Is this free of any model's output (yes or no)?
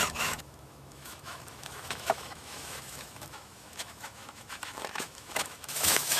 no